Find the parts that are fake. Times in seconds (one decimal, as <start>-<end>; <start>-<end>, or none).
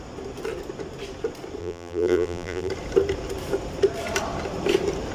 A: 1.6-2.7